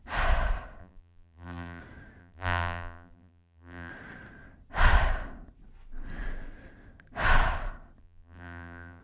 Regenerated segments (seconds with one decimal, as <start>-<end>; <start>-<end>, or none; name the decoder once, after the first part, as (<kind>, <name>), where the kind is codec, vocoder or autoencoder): 0.8-1.8 (vocoder, BigVGAN v2); 2.2-3.9; 8.0-9.0